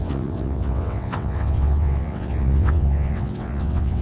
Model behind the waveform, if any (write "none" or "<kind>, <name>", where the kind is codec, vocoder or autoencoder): vocoder, WaveNeXt